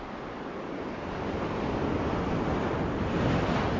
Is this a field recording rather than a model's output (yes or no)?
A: yes